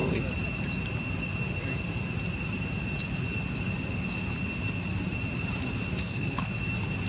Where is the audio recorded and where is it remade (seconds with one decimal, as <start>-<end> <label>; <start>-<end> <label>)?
0.0-6.0 recorded; 6.0-6.5 remade; 6.5-7.1 recorded